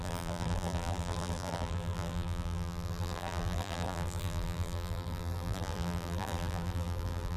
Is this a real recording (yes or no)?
no